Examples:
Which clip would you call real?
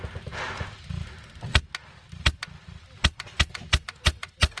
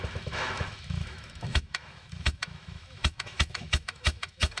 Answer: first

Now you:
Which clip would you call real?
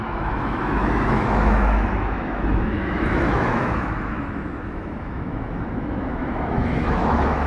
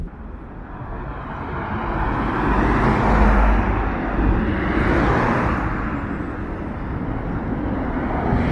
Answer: second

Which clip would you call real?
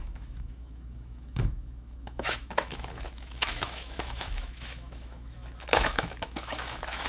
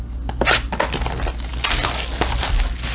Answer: second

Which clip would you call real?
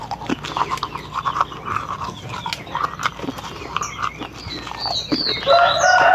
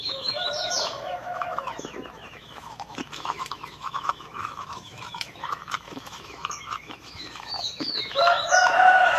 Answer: first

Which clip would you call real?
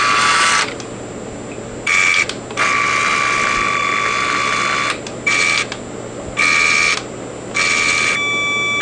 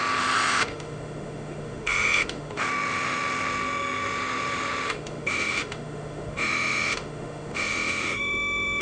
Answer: first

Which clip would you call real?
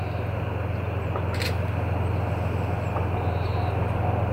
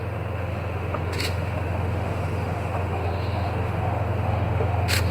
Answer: first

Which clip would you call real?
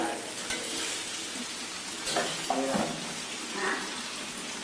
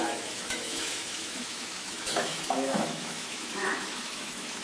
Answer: first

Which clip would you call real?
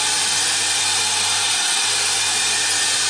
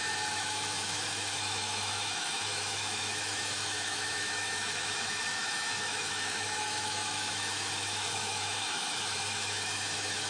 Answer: first